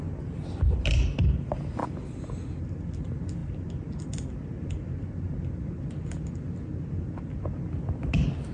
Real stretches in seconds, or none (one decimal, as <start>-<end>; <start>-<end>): 0.0-8.5

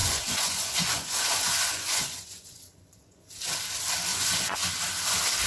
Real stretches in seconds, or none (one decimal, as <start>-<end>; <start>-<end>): 3.3-4.1; 4.7-5.5

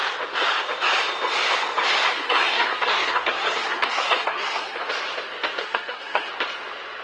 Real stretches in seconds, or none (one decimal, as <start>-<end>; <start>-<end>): 0.0-2.1; 4.8-5.6; 6.3-7.0

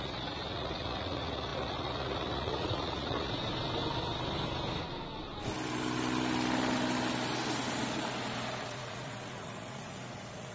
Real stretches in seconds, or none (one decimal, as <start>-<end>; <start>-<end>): 3.4-8.6

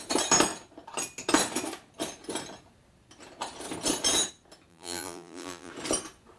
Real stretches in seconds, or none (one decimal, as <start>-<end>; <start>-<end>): 0.0-4.7; 5.7-6.4

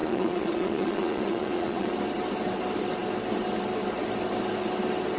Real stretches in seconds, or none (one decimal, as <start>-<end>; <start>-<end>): 1.9-5.2

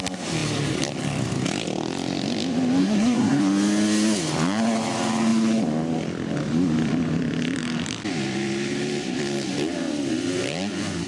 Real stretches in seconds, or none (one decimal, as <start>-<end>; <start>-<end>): 0.0-2.8; 3.4-11.1

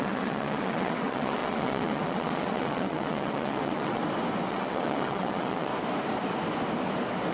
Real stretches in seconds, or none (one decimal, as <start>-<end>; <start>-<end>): 4.0-4.5; 5.7-7.3